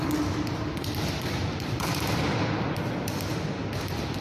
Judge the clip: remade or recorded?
recorded